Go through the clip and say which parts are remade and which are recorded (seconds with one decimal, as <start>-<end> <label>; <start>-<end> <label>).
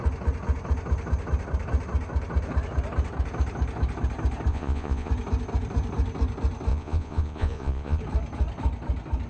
0.0-4.5 recorded; 4.5-5.1 remade; 5.1-6.7 recorded; 6.7-8.0 remade; 8.0-9.3 recorded